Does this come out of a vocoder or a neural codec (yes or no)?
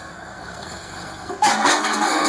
yes